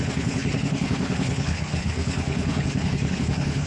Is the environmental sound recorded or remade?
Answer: remade